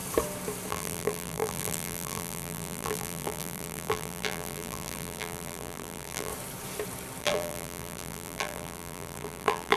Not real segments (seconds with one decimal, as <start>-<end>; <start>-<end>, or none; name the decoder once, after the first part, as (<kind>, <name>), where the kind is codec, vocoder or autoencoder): 0.7-6.3 (vocoder, BigVGAN v2); 7.2-9.8

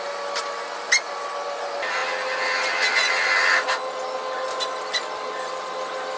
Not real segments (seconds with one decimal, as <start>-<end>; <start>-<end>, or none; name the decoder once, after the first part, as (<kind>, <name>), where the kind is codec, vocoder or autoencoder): none

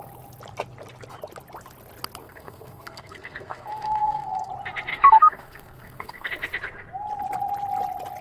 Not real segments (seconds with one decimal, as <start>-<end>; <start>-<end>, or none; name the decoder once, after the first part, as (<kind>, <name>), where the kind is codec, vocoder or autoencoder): 2.2-4.5 (codec, SNAC); 4.9-6.3

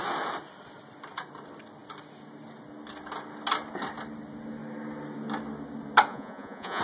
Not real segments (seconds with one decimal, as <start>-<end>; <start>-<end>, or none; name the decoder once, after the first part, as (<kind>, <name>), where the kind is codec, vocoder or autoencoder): 6.1-6.8 (vocoder, Vocos)

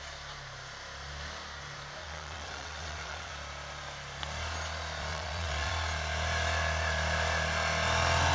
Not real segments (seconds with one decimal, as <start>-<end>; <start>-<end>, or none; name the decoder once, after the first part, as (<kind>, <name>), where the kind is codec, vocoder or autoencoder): 2.0-3.3 (vocoder, WaveNeXt); 5.1-5.7

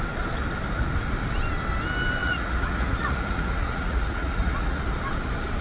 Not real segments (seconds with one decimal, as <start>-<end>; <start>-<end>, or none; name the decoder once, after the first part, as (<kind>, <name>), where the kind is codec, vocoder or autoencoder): 2.2-4.8 (vocoder, Vocos)

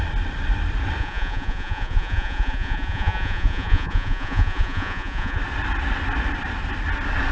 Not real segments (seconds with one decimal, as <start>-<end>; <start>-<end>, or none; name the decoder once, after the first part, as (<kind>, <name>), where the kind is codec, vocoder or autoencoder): 1.0-5.4 (vocoder, Vocos)